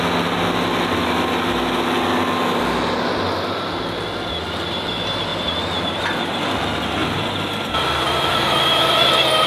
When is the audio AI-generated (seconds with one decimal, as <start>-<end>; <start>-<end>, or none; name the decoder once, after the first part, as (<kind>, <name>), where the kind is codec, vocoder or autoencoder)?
7.0-8.3 (vocoder, BigVGAN v2)